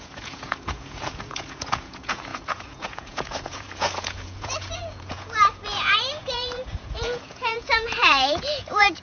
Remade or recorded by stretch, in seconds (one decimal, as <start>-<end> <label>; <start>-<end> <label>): 0.0-9.0 remade